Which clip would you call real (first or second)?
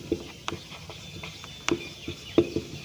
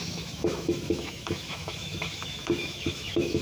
first